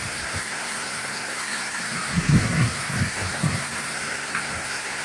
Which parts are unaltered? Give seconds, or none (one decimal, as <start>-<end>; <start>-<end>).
none